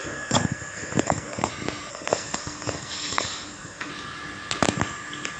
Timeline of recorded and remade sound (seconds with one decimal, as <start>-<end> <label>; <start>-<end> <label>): 0.0-1.5 remade; 1.5-1.9 recorded; 1.9-3.9 remade; 3.9-5.4 recorded